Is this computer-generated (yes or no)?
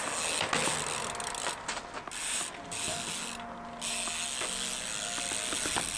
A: no